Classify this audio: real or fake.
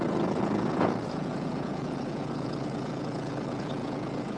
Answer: fake